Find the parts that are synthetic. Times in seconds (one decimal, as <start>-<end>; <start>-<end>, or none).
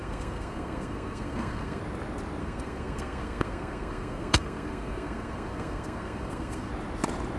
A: 0.0-1.8; 2.4-6.7